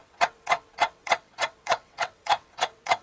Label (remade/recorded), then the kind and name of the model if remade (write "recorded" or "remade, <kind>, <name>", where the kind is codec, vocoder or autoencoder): remade, vocoder, WaveNeXt